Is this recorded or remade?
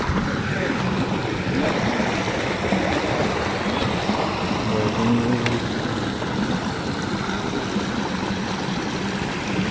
recorded